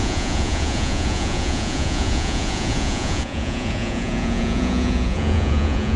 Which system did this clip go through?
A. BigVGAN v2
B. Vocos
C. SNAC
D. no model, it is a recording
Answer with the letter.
B